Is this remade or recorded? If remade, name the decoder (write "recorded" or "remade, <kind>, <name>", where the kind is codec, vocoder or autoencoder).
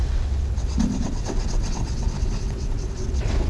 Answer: remade, vocoder, WaveNeXt